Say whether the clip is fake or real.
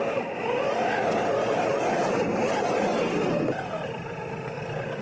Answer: real